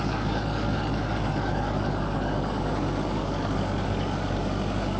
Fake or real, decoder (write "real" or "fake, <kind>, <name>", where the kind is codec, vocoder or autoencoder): fake, codec, DAC